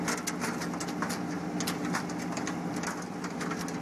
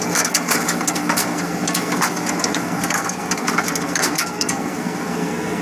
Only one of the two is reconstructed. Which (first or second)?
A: second